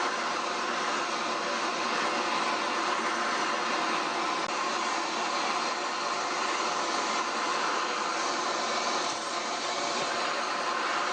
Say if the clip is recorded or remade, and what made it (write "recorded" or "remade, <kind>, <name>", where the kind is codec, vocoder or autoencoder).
recorded